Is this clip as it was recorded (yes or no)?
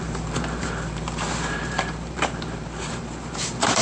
no